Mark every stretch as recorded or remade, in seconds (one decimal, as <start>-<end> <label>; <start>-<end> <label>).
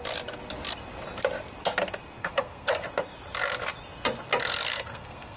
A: 0.0-2.2 recorded; 2.2-2.7 remade; 2.7-4.7 recorded; 4.7-5.4 remade